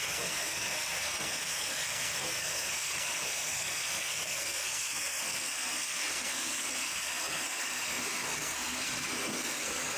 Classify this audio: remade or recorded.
remade